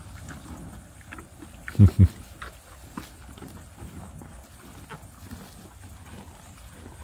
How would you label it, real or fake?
real